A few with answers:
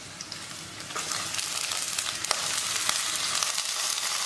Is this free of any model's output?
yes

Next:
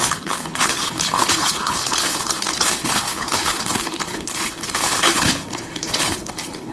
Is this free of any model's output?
no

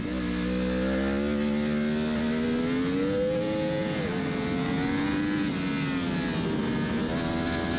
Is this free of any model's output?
yes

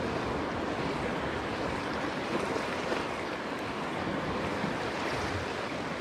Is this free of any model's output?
yes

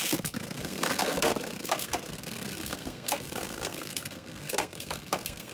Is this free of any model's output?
no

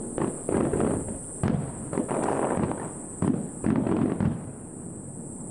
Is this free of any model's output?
yes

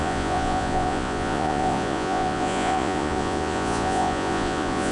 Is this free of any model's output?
no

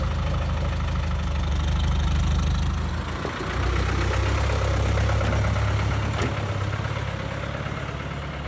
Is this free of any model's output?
yes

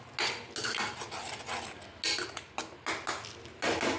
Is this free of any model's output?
yes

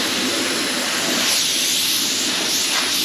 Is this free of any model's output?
yes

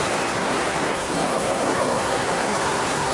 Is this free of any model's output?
no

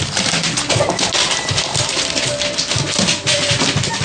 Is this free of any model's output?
yes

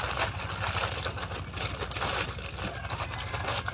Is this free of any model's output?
yes